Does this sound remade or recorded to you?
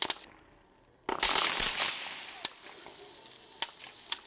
recorded